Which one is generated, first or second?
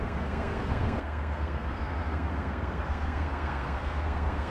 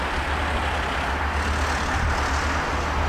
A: first